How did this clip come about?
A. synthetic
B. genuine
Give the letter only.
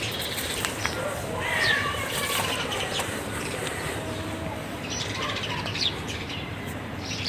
A